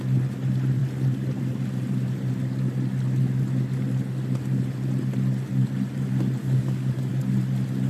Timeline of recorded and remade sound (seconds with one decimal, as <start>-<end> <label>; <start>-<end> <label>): 0.0-6.4 recorded; 6.4-7.1 remade; 7.1-7.9 recorded